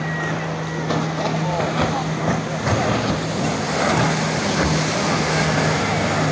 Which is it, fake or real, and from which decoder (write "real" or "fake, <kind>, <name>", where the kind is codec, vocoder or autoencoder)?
real